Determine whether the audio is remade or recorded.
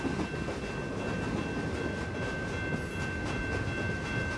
recorded